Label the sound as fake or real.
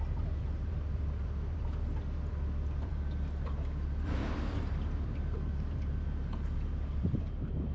fake